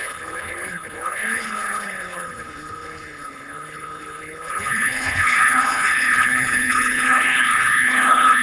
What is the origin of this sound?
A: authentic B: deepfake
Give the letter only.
B